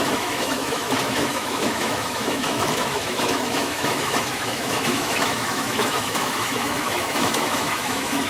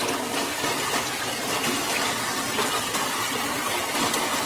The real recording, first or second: second